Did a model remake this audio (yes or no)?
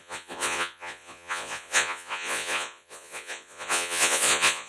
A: yes